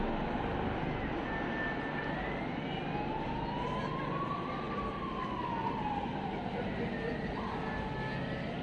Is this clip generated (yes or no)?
no